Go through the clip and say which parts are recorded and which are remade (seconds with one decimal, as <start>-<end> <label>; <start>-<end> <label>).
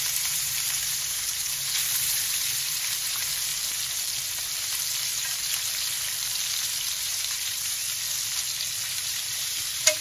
0.0-3.5 remade; 3.5-7.0 recorded; 7.0-7.8 remade; 7.8-8.9 recorded; 8.9-10.0 remade